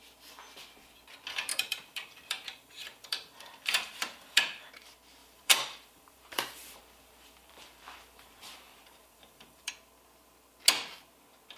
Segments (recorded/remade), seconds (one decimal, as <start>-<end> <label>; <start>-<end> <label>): 0.0-1.5 recorded; 1.5-4.7 remade; 4.7-5.2 recorded; 5.2-9.7 remade; 9.7-11.6 recorded